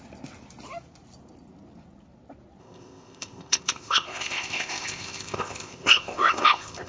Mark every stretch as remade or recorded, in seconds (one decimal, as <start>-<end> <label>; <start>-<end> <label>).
0.0-2.6 recorded; 2.6-6.9 remade